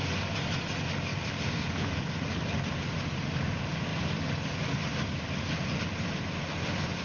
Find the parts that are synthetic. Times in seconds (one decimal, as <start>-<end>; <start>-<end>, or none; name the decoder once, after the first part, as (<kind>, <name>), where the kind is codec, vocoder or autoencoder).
none